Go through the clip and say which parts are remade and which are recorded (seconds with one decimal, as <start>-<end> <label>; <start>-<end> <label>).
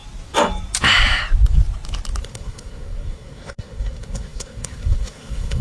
0.0-2.2 recorded; 2.2-5.6 remade